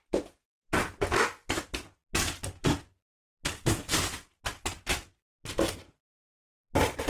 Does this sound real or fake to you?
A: real